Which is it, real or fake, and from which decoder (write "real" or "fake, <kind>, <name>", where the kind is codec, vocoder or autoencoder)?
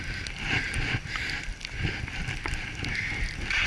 real